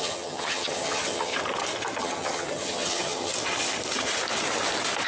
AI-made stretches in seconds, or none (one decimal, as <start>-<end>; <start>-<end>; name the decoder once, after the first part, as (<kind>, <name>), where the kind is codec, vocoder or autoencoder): 0.0-1.3 (vocoder, HiFi-GAN); 2.0-3.3